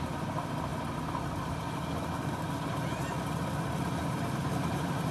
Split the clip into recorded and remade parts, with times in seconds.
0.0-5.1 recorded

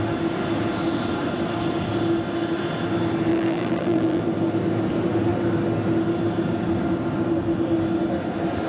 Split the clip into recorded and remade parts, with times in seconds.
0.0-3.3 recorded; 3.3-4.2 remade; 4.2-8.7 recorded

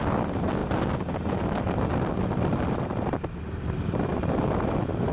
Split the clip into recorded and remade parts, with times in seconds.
0.0-0.6 remade; 0.6-2.7 recorded; 2.7-5.1 remade

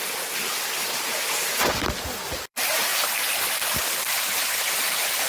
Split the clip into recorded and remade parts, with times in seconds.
0.0-2.1 recorded; 2.1-2.9 remade; 2.9-3.5 recorded; 3.5-5.3 remade

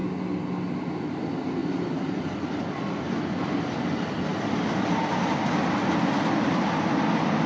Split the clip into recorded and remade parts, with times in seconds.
0.0-1.6 recorded; 1.6-2.2 remade; 2.2-7.5 recorded